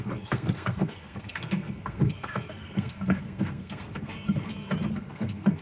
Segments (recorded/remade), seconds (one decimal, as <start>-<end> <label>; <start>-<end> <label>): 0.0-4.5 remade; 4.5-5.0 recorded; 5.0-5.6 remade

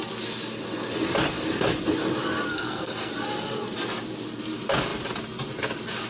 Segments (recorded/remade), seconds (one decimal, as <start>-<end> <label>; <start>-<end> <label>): 0.0-2.5 recorded; 2.5-3.1 remade; 3.1-6.1 recorded

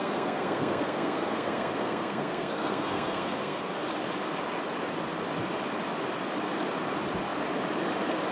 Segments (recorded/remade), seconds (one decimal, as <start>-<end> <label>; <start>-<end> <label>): 0.0-3.7 remade; 3.7-8.3 recorded

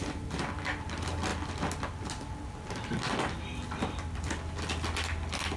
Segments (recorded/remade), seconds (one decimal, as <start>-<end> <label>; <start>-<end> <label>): 0.0-5.6 recorded

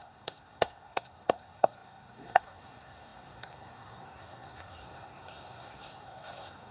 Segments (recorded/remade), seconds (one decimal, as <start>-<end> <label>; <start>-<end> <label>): 0.0-6.7 remade

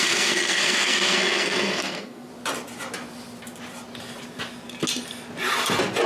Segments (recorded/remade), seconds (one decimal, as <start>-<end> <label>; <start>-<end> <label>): 0.0-2.3 remade; 2.3-6.1 recorded

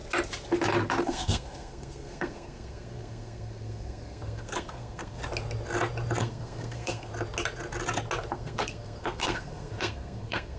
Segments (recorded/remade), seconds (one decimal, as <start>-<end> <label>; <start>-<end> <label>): 0.0-1.0 recorded; 1.0-5.2 remade; 5.2-6.2 recorded; 6.2-7.1 remade; 7.1-8.3 recorded; 8.3-10.6 remade

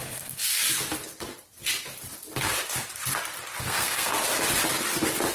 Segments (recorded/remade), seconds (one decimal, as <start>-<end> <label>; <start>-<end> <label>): 0.0-0.5 remade; 0.5-3.6 recorded; 3.6-4.1 remade; 4.1-5.3 recorded